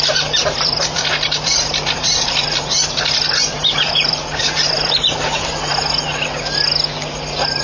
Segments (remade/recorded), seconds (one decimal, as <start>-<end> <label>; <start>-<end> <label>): 0.0-5.7 remade; 5.7-7.6 recorded

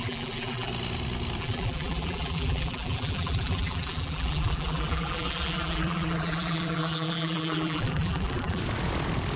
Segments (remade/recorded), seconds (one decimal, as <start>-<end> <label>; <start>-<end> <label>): 0.0-0.7 remade; 0.7-1.4 recorded; 1.4-8.6 remade; 8.6-9.4 recorded

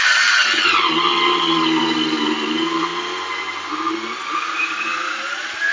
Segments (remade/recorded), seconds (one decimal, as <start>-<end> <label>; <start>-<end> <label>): 0.0-0.4 remade; 0.4-1.8 recorded; 1.8-2.9 remade; 2.9-3.7 recorded; 3.7-5.7 remade

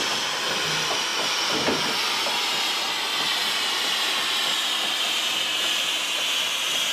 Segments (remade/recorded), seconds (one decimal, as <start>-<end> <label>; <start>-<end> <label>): 0.0-6.9 recorded

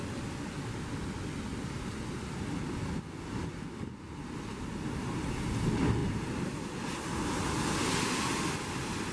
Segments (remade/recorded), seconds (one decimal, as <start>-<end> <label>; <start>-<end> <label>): 0.0-6.0 recorded; 6.0-6.7 remade; 6.7-9.1 recorded

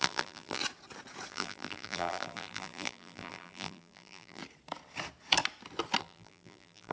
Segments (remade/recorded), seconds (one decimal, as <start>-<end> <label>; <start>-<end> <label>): 0.0-0.6 remade; 0.6-1.3 recorded; 1.3-4.4 remade; 4.4-6.0 recorded; 6.0-6.9 remade

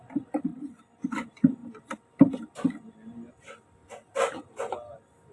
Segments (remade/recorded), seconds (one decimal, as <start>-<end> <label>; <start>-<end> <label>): 0.0-0.5 remade; 0.5-1.0 recorded; 1.0-3.8 remade; 3.8-4.3 recorded; 4.3-5.3 remade

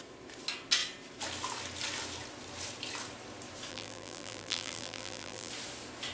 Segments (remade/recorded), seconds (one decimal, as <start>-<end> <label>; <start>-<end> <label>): 0.0-3.7 recorded; 3.7-5.5 remade; 5.5-6.1 recorded